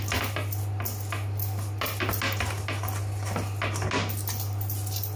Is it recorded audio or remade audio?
recorded